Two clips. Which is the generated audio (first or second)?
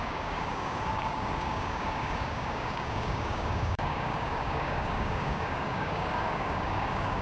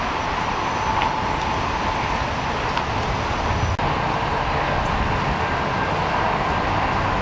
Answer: first